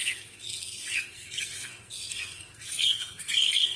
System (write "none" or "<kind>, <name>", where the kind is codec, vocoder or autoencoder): codec, SNAC